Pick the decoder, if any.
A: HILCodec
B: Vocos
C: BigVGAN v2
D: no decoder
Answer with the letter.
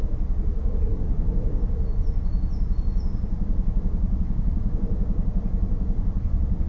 D